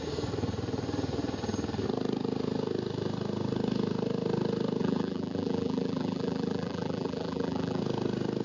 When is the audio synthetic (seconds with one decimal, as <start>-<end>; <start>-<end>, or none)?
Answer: 4.8-7.8